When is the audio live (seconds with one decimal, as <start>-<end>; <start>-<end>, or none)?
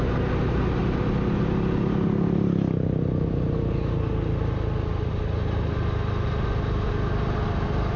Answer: 0.0-8.0